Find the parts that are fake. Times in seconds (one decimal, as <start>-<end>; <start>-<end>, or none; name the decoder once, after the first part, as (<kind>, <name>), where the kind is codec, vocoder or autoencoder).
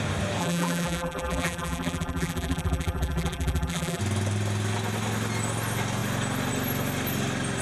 0.4-4.0 (vocoder, BigVGAN v2)